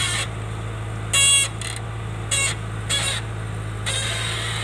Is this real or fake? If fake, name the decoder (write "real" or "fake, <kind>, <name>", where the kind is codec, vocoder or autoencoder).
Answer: real